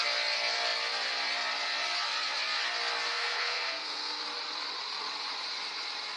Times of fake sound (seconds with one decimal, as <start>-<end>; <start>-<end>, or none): 3.1-4.2